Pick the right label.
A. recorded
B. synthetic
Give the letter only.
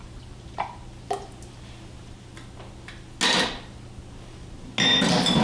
A